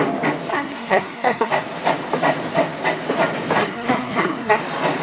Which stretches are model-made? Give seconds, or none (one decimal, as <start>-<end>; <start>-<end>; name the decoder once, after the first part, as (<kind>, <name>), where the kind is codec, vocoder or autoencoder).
0.5-1.5 (codec, SNAC); 3.6-4.6